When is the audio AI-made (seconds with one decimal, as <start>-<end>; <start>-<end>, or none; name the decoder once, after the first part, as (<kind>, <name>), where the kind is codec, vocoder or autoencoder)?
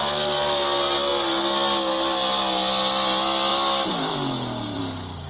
3.5-4.8 (vocoder, BigVGAN v2)